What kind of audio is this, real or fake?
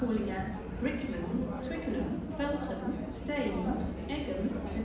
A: real